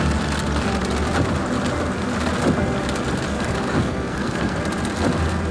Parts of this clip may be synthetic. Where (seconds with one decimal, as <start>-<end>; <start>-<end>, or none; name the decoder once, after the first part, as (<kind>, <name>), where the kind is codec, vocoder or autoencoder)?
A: 3.3-4.6 (codec, SNAC)